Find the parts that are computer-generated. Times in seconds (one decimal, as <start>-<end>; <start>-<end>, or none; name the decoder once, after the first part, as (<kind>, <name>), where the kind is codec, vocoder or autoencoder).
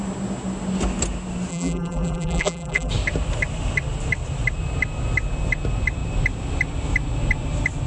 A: 1.5-2.9 (vocoder, BigVGAN v2)